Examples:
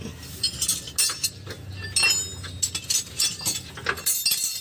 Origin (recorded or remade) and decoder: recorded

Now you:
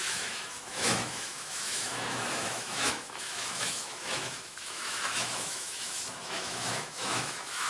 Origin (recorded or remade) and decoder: remade, autoencoder, DAC-VAE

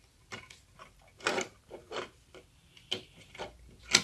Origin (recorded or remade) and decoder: recorded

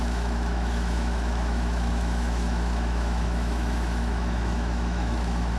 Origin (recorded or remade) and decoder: remade, autoencoder, DAC-VAE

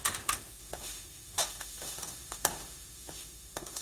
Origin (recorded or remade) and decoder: remade, autoencoder, DAC-VAE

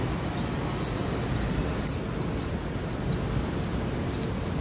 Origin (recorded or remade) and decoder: recorded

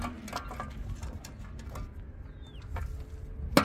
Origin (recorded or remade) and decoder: recorded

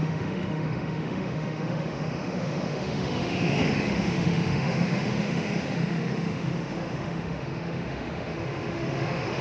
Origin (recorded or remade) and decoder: remade, autoencoder, DAC-VAE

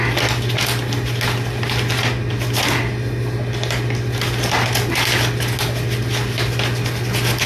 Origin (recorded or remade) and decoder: recorded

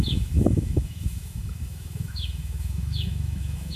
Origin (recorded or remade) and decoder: remade, autoencoder, DAC-VAE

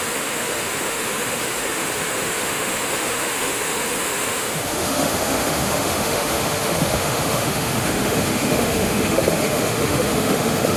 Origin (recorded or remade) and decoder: remade, autoencoder, DAC-VAE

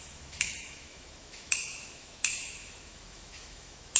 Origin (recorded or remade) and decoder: remade, autoencoder, DAC-VAE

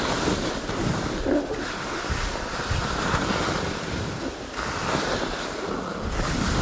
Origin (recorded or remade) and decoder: recorded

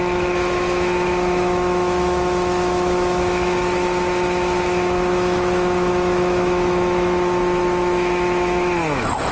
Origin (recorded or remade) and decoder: remade, autoencoder, DAC-VAE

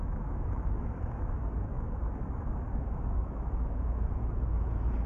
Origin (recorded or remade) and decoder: remade, autoencoder, DAC-VAE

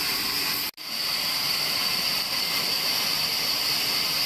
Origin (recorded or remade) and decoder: recorded